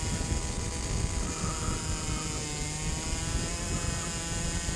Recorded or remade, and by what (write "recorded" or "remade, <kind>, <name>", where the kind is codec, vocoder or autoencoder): recorded